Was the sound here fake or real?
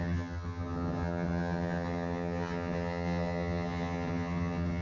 fake